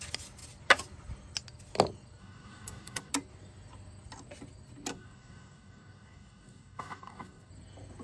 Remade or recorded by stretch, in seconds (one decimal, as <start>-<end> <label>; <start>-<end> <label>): 0.0-2.2 recorded; 2.2-3.1 remade; 3.1-4.9 recorded; 4.9-7.5 remade; 7.5-8.0 recorded